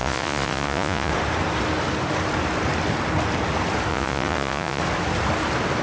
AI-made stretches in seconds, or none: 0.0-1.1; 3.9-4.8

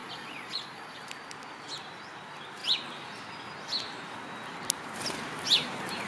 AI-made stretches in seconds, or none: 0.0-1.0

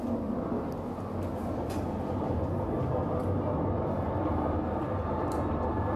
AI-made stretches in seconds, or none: none

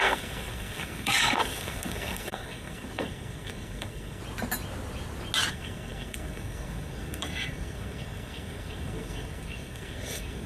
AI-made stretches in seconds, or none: 0.0-4.2; 5.5-10.5

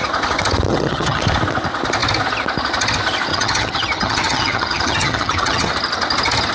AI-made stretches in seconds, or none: 0.7-1.2; 3.3-5.7

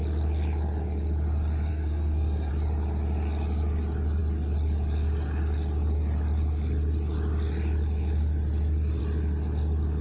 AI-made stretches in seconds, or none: 1.7-2.5

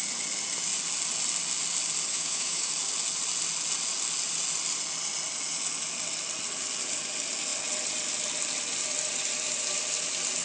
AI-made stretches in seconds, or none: 2.1-2.7